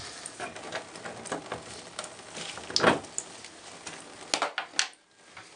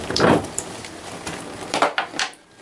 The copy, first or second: second